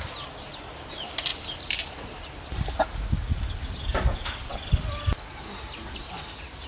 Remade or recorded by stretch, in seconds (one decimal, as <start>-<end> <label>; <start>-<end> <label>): 0.0-6.7 recorded